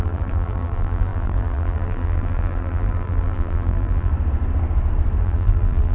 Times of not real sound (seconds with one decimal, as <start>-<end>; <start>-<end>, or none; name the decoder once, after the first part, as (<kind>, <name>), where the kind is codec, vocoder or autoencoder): 0.0-4.1 (vocoder, BigVGAN v2); 5.2-5.9